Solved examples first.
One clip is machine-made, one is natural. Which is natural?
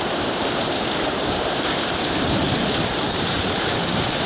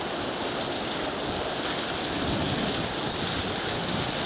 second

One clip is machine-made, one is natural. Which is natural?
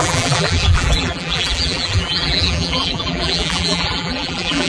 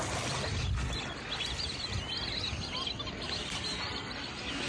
second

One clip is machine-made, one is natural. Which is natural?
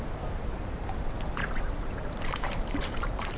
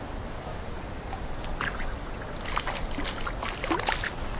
second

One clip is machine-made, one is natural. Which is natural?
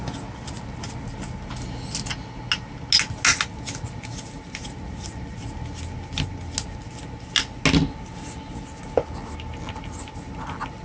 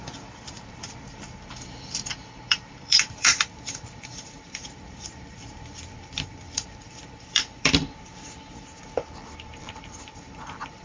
first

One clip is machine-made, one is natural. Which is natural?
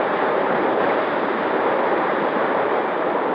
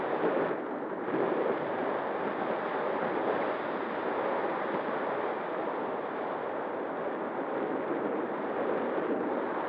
second